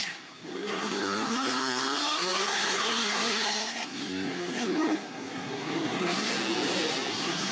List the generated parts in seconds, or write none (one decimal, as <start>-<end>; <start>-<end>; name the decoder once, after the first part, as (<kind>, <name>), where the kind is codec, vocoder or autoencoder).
0.0-6.3 (codec, SNAC); 7.1-7.5